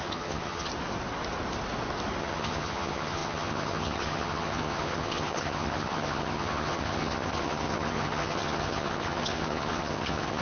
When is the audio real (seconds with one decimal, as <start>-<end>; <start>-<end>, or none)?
0.7-2.2